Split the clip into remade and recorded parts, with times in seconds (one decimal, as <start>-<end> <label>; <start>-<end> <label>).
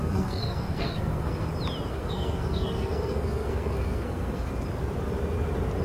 0.0-1.5 remade; 1.5-1.9 recorded; 1.9-4.5 remade; 4.5-5.8 recorded